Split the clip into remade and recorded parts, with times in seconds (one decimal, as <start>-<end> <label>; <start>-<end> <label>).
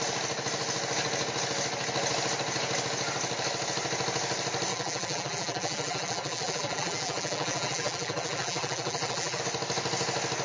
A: 0.0-4.7 recorded; 4.7-9.4 remade; 9.4-10.4 recorded